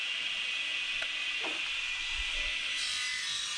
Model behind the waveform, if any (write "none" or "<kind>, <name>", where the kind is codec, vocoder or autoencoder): none